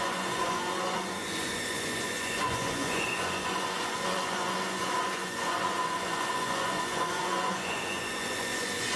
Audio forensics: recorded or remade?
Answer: remade